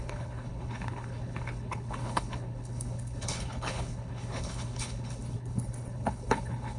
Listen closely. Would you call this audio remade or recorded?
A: remade